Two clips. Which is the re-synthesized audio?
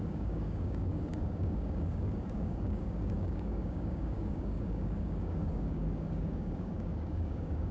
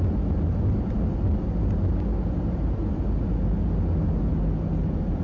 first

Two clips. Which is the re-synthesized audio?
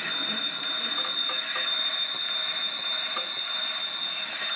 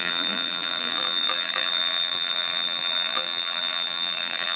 second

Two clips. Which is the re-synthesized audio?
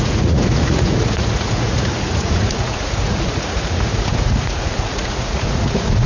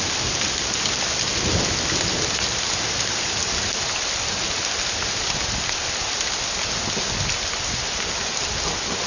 first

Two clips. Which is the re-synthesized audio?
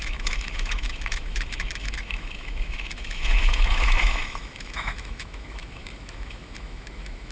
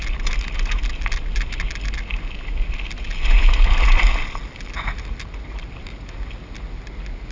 first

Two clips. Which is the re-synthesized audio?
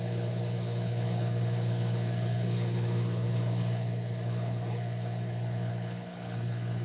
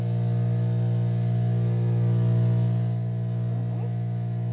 first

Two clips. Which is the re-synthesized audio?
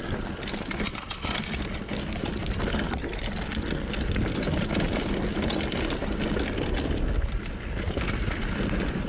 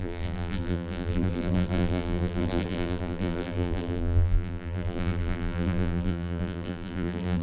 second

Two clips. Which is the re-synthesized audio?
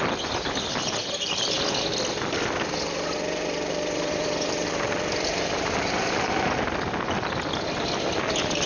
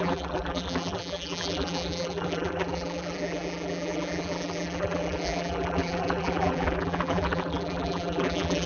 second